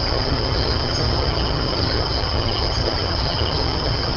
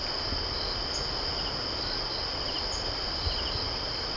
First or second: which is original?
second